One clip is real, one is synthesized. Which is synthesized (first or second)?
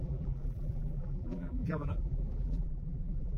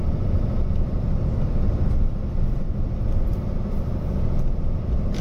first